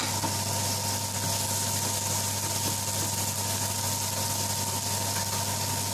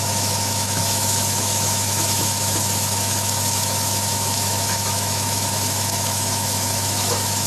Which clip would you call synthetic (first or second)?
second